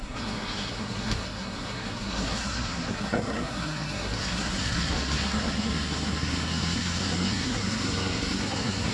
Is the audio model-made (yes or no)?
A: yes